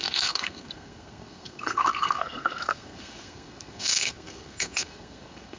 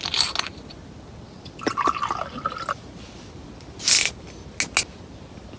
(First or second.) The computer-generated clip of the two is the first